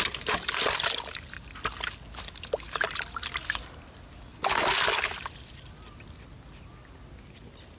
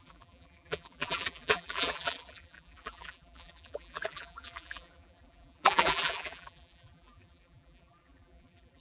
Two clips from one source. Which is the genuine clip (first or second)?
first